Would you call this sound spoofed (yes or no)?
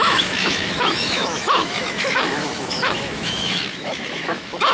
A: yes